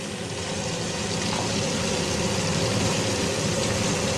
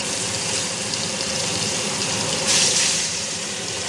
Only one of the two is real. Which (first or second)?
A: first